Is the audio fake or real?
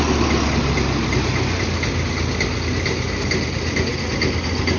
real